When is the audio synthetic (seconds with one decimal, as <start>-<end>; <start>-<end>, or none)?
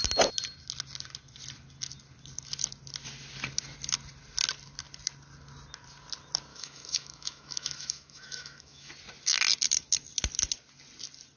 6.5-8.9